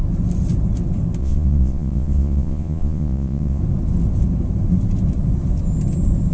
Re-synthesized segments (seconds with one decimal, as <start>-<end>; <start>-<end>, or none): 1.2-3.6